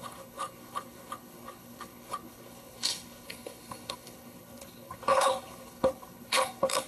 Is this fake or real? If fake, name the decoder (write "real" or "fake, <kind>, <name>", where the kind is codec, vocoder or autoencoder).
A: fake, codec, HILCodec